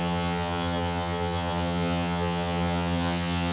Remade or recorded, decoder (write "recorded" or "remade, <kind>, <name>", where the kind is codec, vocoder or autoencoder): remade, vocoder, HiFi-GAN